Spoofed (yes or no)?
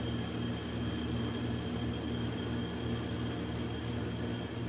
no